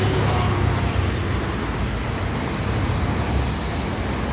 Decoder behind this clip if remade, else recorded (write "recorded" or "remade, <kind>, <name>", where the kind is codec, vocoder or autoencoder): recorded